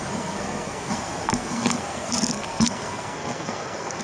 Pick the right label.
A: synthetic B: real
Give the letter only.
A